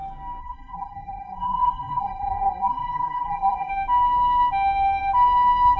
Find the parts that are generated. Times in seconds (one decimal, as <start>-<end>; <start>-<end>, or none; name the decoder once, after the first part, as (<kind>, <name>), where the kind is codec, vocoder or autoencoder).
0.4-3.7 (codec, SNAC)